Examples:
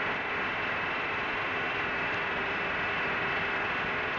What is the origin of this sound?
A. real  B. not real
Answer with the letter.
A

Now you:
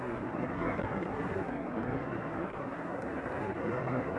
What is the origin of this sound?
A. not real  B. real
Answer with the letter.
A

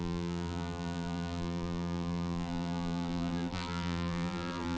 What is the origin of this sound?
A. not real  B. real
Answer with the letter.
A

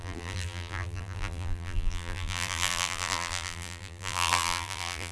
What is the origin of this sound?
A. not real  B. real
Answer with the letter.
A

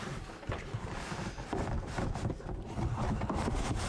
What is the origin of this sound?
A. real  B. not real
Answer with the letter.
B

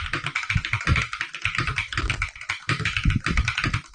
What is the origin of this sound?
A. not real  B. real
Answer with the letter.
B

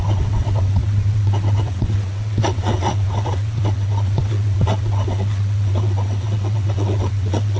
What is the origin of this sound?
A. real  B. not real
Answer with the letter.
B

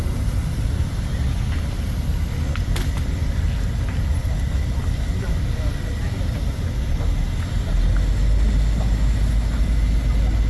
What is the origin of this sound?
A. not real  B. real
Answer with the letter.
B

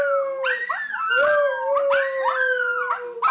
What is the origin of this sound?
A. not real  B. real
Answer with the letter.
B